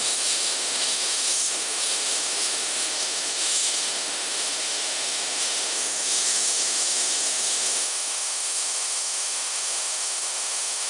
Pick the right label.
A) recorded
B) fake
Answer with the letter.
B